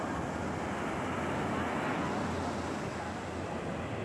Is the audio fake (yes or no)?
no